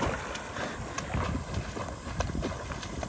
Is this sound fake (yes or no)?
no